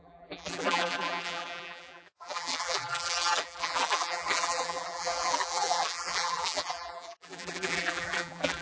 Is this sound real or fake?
fake